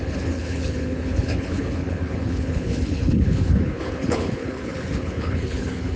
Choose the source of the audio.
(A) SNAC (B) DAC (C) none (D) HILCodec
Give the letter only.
D